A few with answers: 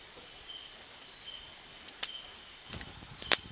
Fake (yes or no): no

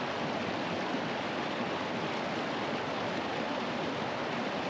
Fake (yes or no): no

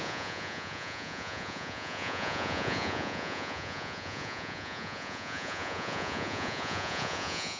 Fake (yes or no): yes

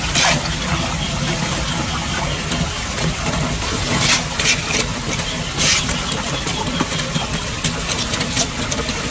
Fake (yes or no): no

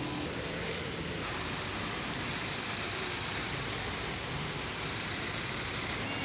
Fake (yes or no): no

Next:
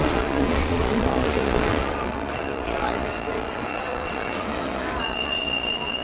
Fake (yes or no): yes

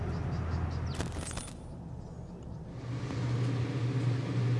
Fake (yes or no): no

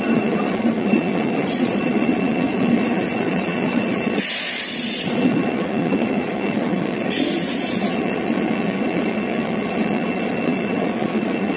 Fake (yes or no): yes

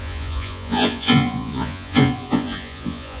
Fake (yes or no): yes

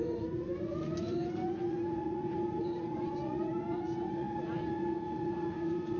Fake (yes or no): yes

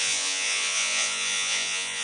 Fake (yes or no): yes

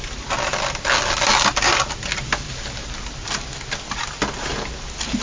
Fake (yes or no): no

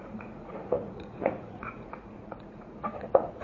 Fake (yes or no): yes